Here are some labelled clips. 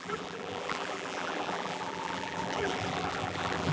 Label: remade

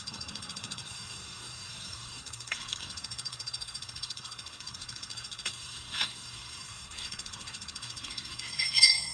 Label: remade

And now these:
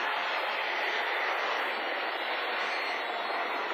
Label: recorded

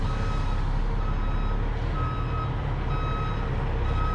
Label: recorded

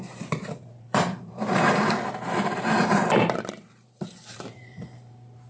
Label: remade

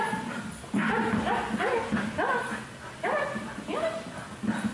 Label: remade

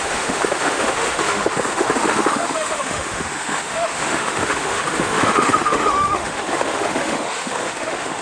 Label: remade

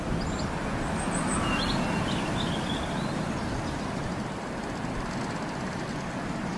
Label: recorded